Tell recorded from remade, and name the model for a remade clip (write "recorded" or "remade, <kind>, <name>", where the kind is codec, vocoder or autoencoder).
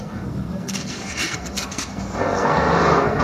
remade, codec, SNAC